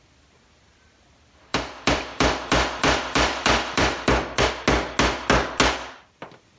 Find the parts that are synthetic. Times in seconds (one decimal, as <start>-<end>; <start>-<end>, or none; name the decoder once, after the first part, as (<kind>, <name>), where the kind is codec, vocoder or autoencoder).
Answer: 1.5-4.5 (vocoder, BigVGAN v2)